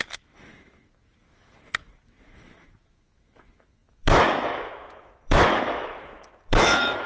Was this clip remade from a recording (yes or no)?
yes